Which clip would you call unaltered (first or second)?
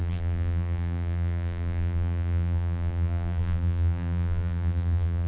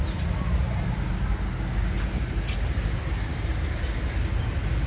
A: second